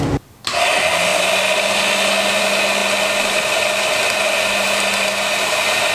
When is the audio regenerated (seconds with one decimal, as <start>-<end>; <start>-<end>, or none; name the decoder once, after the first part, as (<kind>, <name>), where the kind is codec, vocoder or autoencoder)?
none